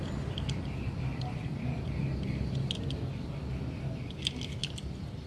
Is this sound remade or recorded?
recorded